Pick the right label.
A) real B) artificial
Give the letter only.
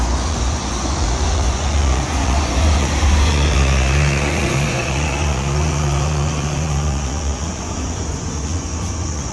B